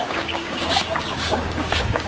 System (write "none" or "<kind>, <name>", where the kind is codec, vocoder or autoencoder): codec, DAC